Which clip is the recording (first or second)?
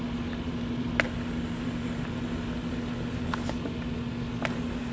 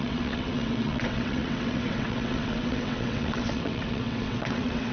first